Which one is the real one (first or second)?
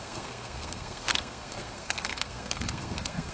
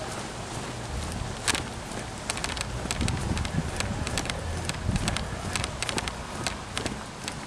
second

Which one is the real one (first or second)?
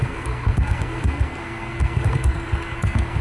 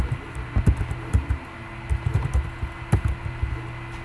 second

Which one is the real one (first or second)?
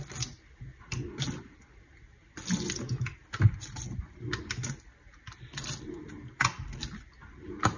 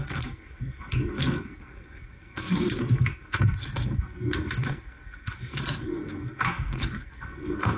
first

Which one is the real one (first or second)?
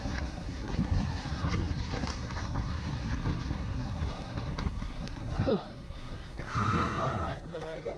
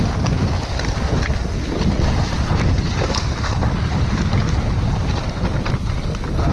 second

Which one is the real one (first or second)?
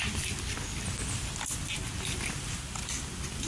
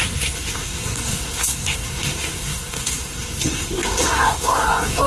first